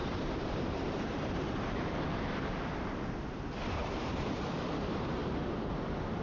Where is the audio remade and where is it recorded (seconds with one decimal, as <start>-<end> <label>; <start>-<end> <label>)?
0.0-3.4 remade; 3.4-3.8 recorded; 3.8-4.6 remade; 4.6-5.2 recorded; 5.2-5.8 remade; 5.8-6.2 recorded